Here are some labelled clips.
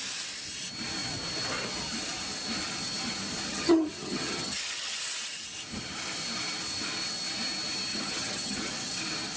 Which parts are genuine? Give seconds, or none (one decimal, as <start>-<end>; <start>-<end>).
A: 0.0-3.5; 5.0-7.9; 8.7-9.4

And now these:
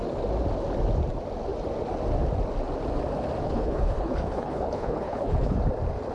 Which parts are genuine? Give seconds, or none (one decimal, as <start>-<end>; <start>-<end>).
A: 0.0-3.4; 5.6-6.1

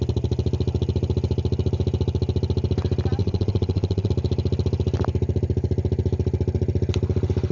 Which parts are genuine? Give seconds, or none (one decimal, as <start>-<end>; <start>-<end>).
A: 0.0-3.2; 4.1-7.5

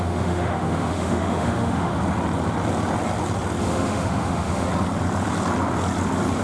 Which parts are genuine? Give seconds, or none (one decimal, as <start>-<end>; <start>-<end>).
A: 1.9-3.6; 4.7-6.4